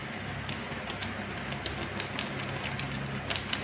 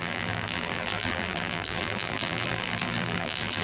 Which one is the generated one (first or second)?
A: second